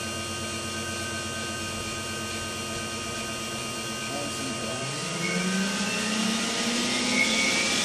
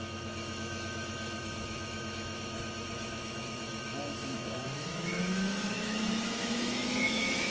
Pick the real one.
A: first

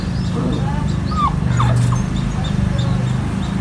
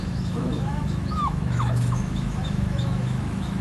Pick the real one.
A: first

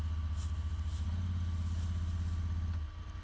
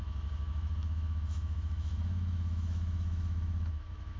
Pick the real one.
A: first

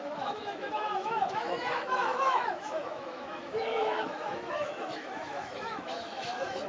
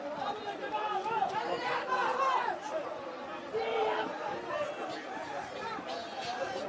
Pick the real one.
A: second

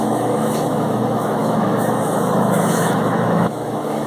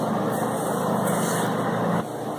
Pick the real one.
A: second